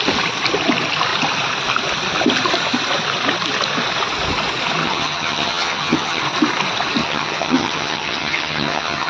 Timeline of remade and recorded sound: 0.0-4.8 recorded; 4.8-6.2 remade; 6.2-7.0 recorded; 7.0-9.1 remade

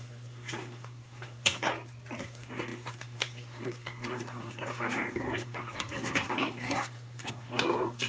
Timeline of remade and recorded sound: 0.0-1.7 remade; 1.7-2.2 recorded; 2.2-8.1 remade

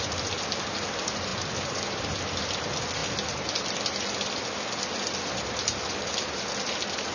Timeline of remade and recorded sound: 0.0-7.1 recorded

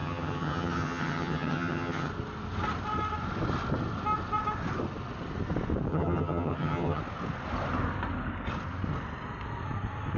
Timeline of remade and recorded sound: 0.0-2.1 remade; 2.1-5.9 recorded; 5.9-7.0 remade; 7.0-10.2 recorded

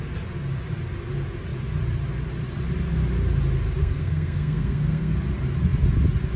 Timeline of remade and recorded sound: 0.0-3.8 recorded; 3.8-5.1 remade; 5.1-6.4 recorded

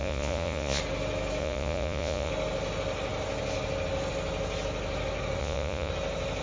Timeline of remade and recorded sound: 0.0-0.8 remade; 0.8-1.4 recorded; 1.4-2.3 remade; 2.3-5.4 recorded; 5.4-5.9 remade; 5.9-6.4 recorded

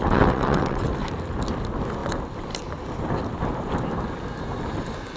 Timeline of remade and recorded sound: 0.0-0.9 remade; 0.9-5.2 recorded

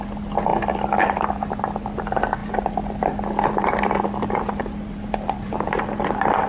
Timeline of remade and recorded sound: 0.0-6.5 recorded